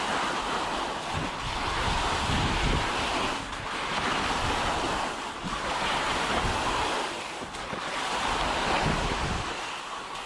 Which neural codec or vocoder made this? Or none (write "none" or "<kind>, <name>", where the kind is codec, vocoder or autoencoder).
none